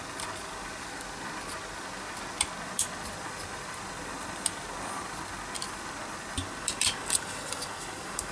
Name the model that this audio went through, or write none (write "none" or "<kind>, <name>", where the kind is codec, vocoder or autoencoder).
none